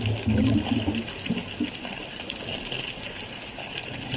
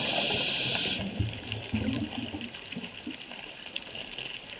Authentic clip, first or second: first